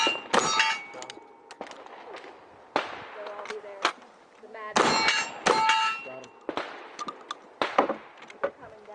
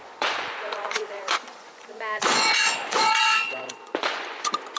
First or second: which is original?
first